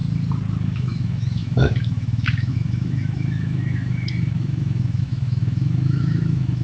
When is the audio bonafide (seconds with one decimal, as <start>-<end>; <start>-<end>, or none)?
0.0-0.6